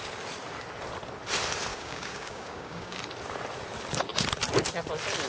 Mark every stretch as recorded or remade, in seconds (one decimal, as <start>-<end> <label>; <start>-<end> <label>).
0.0-1.7 recorded; 1.7-3.0 remade; 3.0-5.3 recorded